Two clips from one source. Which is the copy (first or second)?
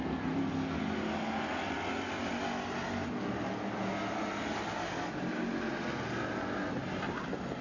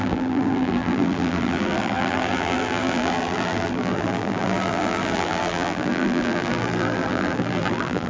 second